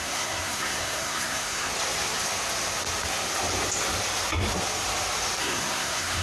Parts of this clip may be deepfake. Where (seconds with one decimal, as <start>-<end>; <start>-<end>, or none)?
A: 0.0-1.7; 5.4-6.2